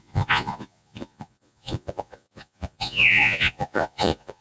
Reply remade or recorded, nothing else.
remade